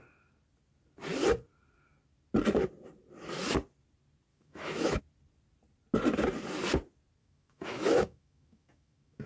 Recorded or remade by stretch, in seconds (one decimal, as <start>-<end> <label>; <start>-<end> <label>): 0.0-4.3 recorded; 4.3-5.0 remade; 5.0-7.2 recorded; 7.2-9.3 remade